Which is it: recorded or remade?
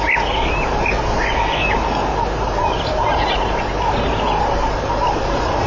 recorded